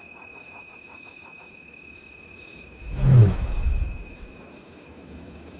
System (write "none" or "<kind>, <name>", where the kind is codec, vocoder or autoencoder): autoencoder, DAC-VAE